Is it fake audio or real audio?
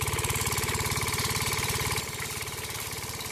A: fake